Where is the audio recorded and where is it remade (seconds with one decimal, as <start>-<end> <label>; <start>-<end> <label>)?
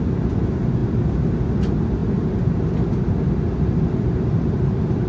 0.0-5.1 recorded